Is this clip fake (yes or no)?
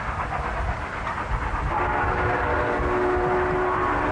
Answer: no